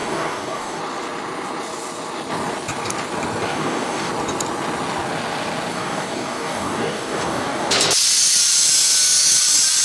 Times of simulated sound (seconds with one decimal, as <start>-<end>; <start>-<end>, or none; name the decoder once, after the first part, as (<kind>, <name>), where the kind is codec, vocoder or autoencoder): 0.0-0.8 (codec, DAC); 3.5-4.1; 5.7-7.7